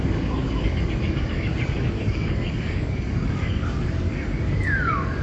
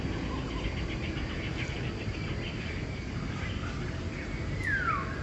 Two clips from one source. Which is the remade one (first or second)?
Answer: first